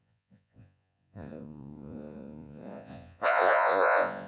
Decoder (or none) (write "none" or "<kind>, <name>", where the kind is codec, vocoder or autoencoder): vocoder, Vocos